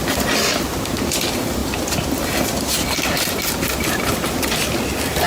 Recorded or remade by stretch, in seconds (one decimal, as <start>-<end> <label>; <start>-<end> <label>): 0.0-5.3 recorded